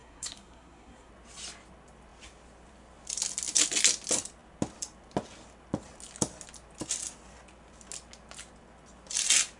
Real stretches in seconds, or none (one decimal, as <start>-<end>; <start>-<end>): 1.1-9.6